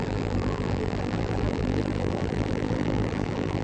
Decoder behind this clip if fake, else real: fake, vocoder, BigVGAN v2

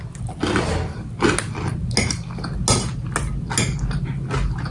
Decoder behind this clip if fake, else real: real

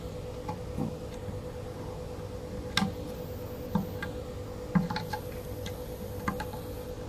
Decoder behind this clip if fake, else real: real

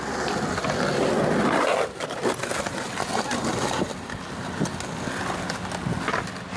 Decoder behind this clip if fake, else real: real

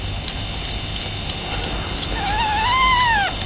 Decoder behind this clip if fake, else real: real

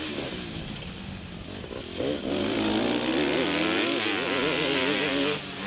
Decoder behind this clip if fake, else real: real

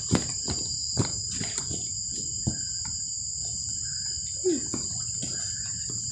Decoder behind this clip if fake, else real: real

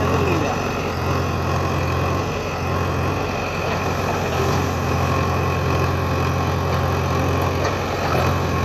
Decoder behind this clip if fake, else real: real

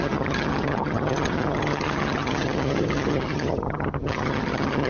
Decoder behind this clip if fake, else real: fake, vocoder, HiFi-GAN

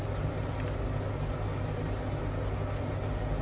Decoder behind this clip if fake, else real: real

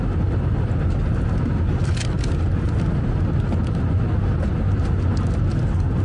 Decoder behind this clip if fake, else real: real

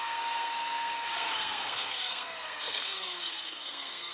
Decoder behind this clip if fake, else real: fake, codec, SNAC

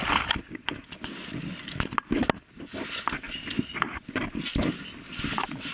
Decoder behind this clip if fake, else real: real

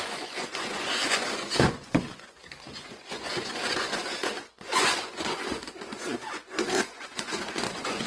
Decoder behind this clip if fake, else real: fake, vocoder, Vocos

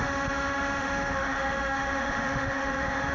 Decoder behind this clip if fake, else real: fake, autoencoder, DAC-VAE